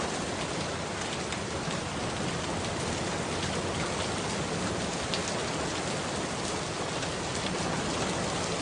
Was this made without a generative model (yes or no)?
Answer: yes